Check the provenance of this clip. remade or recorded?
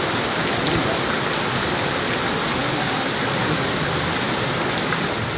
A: recorded